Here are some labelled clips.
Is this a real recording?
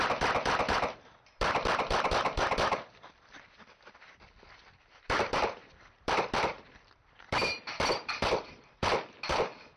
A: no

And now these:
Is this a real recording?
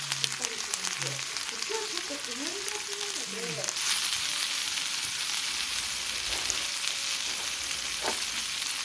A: yes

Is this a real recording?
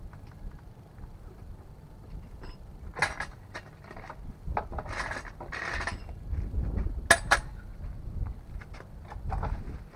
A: yes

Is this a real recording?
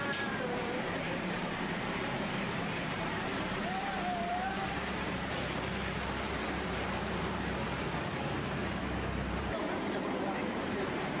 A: no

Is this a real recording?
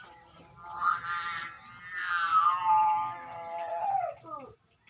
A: yes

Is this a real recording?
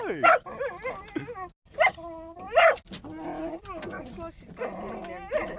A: yes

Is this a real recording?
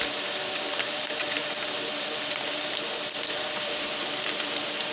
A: no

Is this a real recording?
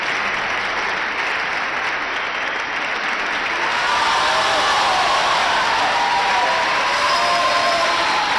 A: yes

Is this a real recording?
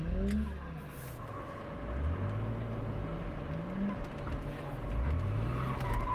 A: yes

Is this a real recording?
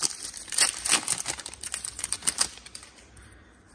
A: no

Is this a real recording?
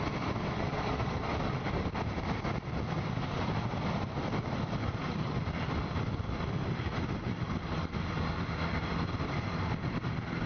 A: no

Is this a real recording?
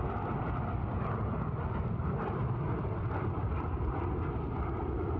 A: no